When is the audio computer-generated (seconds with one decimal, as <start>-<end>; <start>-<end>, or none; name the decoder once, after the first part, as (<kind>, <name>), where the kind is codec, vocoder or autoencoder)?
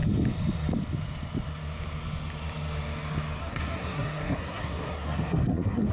3.4-5.9 (codec, SNAC)